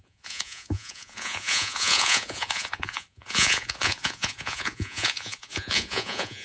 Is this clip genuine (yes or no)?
no